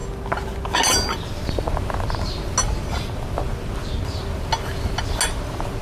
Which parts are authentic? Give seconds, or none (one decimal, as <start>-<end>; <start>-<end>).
0.0-5.8

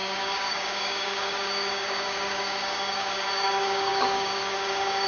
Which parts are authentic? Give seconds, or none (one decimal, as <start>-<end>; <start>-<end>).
none

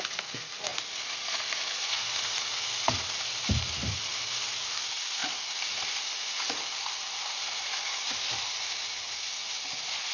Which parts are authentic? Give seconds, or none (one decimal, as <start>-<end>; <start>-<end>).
0.0-10.1